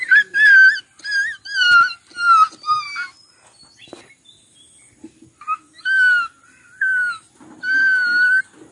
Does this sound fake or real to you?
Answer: real